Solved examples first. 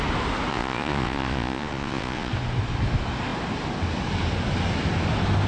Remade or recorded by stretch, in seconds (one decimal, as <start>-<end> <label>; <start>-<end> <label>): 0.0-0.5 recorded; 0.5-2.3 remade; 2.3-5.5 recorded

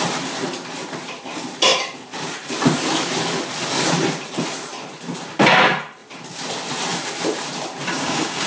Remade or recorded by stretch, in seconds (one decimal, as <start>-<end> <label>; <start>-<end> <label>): 0.0-7.9 recorded; 7.9-8.5 remade

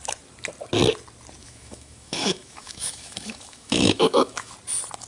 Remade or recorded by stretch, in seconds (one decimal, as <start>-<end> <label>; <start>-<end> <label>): 0.0-1.4 recorded; 1.4-4.5 remade; 4.5-5.1 recorded